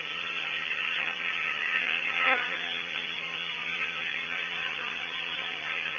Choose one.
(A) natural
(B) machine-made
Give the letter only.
B